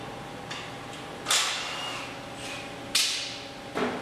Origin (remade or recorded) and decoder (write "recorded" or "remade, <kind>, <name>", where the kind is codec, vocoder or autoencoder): recorded